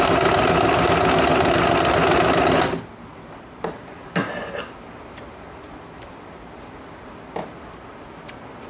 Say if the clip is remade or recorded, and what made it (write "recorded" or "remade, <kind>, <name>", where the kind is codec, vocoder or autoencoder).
recorded